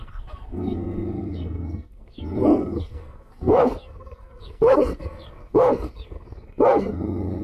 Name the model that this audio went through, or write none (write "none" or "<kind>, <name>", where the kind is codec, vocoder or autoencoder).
codec, SNAC